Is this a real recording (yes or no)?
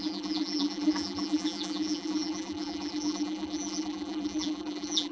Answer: no